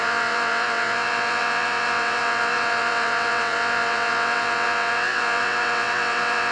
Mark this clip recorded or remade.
remade